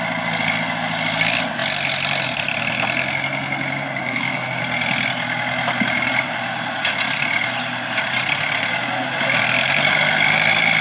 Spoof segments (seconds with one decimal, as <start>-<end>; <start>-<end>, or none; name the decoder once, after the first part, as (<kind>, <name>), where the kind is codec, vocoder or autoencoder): 4.0-4.6 (codec, SNAC)